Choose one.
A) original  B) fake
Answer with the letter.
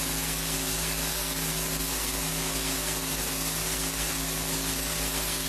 B